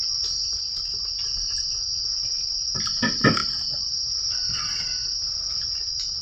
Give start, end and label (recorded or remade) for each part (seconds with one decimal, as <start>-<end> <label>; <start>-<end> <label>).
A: 0.0-6.2 recorded

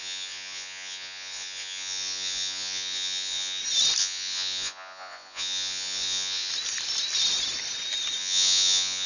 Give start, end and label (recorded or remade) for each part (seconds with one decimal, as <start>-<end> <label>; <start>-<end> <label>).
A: 0.0-3.6 remade; 3.6-4.0 recorded; 4.0-6.5 remade; 6.5-8.2 recorded; 8.2-9.1 remade

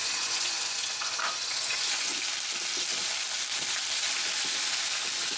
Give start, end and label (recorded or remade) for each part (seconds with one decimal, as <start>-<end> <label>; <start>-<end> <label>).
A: 0.0-2.1 remade; 2.1-5.4 recorded

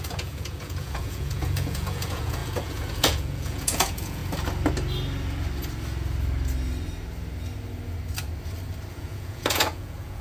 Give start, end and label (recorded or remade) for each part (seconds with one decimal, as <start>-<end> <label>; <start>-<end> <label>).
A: 0.0-4.2 remade; 4.2-8.9 recorded; 8.9-10.2 remade

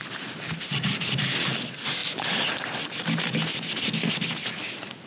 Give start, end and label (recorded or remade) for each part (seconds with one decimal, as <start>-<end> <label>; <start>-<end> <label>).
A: 0.0-5.1 recorded

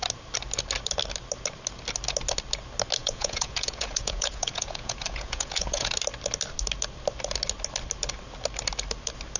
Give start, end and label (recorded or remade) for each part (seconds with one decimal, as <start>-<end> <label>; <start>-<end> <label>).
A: 0.0-3.0 recorded; 3.0-5.9 remade; 5.9-9.4 recorded